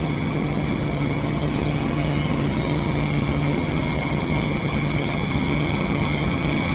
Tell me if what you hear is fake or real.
fake